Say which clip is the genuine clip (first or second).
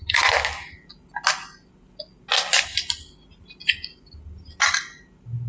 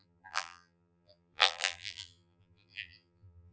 first